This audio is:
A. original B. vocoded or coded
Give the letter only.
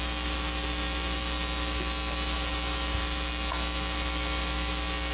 B